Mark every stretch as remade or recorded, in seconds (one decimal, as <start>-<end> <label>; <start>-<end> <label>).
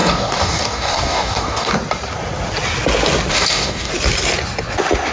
0.0-1.7 remade; 1.7-3.3 recorded; 3.3-3.9 remade; 3.9-5.1 recorded